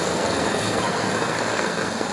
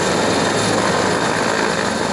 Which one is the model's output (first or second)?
first